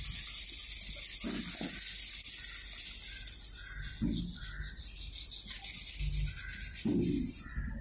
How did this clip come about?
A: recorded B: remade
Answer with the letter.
A